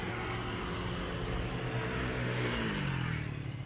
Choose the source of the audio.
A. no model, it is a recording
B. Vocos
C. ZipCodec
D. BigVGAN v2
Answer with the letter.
A